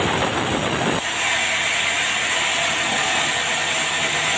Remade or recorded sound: recorded